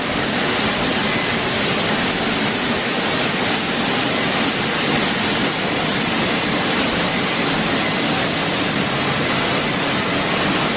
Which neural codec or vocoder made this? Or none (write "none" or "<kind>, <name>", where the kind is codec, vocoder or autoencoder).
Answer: none